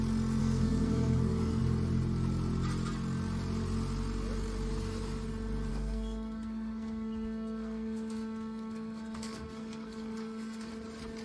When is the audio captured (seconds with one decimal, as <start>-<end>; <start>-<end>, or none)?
0.0-0.4; 1.6-5.7; 10.7-11.2